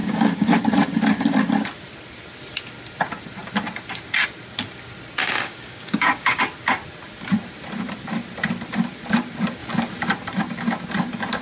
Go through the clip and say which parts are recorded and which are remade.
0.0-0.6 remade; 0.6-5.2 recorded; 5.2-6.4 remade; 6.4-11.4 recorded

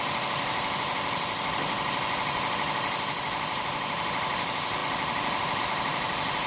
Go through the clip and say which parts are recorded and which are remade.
0.0-6.5 recorded

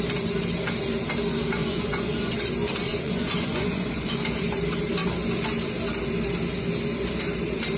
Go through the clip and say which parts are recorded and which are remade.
0.0-1.6 recorded; 1.6-2.5 remade; 2.5-2.9 recorded; 2.9-4.2 remade; 4.2-7.8 recorded

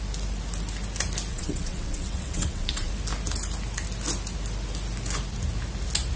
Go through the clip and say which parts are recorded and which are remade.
0.0-1.3 recorded; 1.3-2.9 remade; 2.9-6.2 recorded

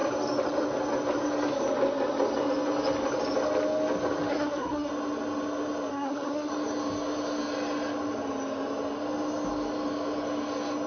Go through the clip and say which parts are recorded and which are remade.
0.0-4.3 recorded; 4.3-4.9 remade; 4.9-5.9 recorded; 5.9-6.5 remade; 6.5-10.9 recorded